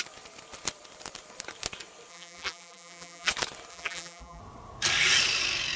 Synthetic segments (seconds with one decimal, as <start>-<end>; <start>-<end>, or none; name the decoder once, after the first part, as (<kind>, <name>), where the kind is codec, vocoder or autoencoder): 2.1-3.3 (vocoder, BigVGAN v2); 3.7-4.4